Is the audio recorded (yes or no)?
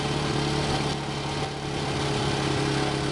yes